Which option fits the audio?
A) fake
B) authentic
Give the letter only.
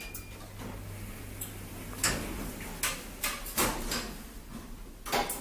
B